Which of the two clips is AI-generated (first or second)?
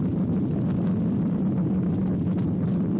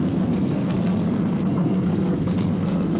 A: second